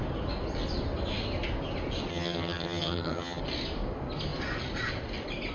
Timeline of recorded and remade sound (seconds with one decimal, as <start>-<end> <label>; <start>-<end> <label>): 0.0-2.1 recorded; 2.1-3.4 remade; 3.4-5.5 recorded